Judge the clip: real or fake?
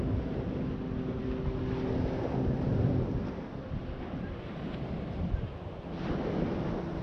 real